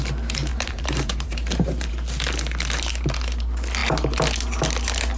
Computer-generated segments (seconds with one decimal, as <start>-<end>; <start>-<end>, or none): 0.5-1.9